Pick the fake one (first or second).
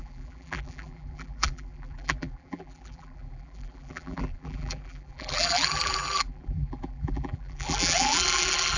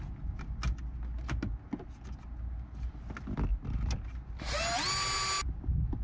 first